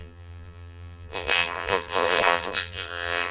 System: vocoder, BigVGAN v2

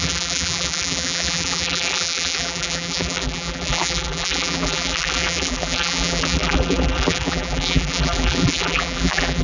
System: vocoder, BigVGAN v2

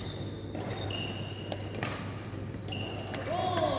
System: none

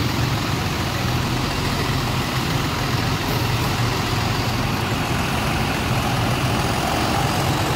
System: vocoder, BigVGAN v2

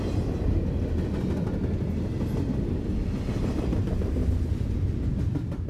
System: none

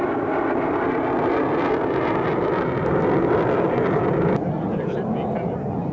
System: none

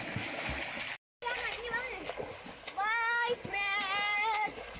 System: none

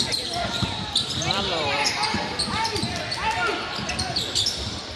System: vocoder, BigVGAN v2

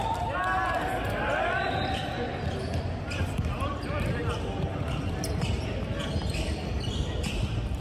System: vocoder, BigVGAN v2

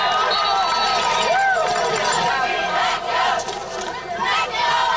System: none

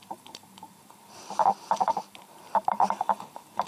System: vocoder, BigVGAN v2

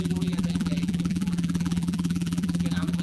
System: vocoder, BigVGAN v2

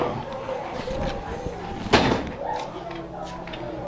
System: none